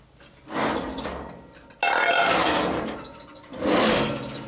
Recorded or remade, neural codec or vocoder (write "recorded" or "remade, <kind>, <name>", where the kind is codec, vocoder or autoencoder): recorded